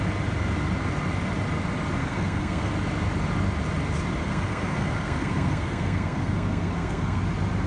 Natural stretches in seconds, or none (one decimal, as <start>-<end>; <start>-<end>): 0.0-2.0; 2.7-4.2; 7.2-7.7